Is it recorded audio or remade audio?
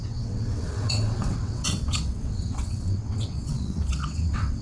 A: remade